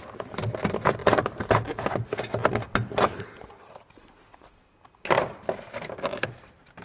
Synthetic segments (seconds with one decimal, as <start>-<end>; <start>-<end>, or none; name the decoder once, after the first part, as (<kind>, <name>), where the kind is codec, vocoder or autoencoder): 0.0-1.0 (vocoder, BigVGAN v2); 5.1-6.8